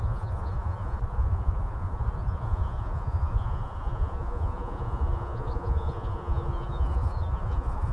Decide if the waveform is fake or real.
fake